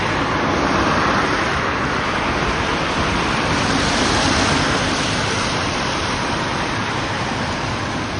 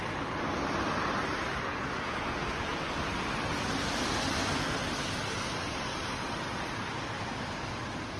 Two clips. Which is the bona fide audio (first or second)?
second